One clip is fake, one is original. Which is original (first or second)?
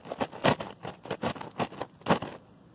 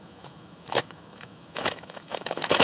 first